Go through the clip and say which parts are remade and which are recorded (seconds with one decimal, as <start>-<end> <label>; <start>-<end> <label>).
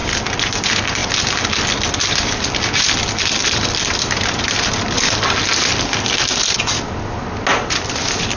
0.0-1.0 recorded; 1.0-1.5 remade; 1.5-3.4 recorded; 3.4-5.0 remade; 5.0-7.5 recorded; 7.5-8.4 remade